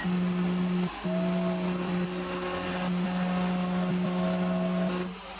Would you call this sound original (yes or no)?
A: yes